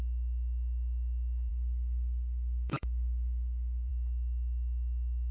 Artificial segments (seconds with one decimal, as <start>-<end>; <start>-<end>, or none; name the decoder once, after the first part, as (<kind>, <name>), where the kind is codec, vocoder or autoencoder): 1.5-3.9 (codec, DAC)